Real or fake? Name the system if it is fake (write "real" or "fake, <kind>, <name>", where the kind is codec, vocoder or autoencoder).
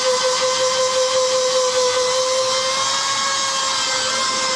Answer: real